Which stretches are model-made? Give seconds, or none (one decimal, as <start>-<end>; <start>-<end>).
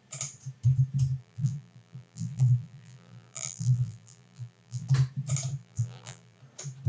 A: 1.2-4.9; 5.6-6.4